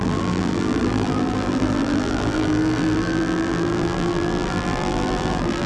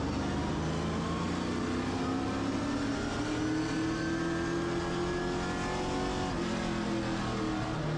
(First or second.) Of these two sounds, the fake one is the first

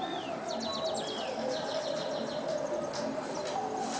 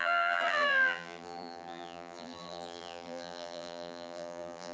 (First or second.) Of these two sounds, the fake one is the second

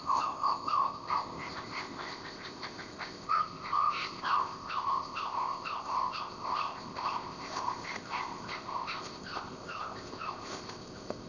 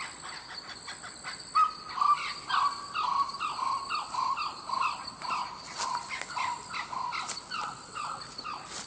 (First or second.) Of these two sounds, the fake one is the first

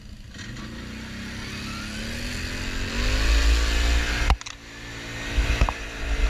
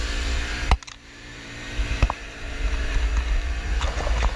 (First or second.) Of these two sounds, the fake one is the second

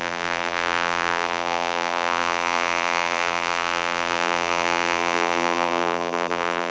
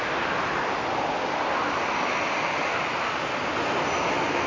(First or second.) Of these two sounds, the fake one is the first